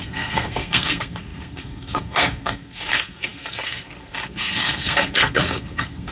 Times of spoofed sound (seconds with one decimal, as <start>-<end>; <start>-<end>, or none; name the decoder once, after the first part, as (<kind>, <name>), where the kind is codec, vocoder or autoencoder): 0.0-6.1 (codec, SNAC)

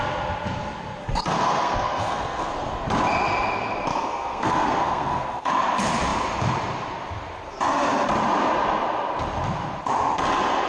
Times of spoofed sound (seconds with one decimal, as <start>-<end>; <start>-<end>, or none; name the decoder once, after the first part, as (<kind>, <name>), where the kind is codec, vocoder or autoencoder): 1.0-2.7 (codec, SNAC); 3.9-5.5

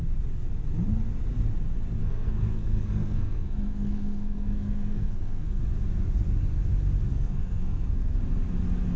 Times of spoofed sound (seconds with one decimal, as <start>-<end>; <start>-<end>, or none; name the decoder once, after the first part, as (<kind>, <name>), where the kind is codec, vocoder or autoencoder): 2.0-5.6 (codec, SNAC); 7.1-8.2

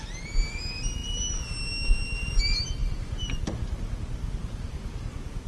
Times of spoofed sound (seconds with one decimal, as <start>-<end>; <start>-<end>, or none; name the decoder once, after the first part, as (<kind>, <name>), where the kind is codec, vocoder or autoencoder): none

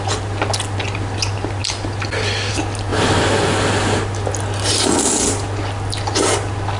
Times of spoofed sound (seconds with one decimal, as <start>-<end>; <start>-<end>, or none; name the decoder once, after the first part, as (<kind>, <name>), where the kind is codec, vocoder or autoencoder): none

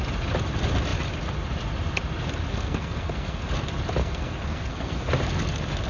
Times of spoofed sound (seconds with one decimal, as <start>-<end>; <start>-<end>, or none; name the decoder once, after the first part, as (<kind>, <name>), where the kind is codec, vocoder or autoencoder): 2.5-3.5 (codec, SNAC); 4.0-5.1

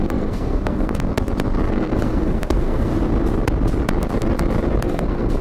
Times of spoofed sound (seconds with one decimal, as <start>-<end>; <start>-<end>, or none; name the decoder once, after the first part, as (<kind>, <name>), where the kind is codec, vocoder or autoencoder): 0.0-1.1 (codec, SNAC); 1.7-2.9; 4.8-5.4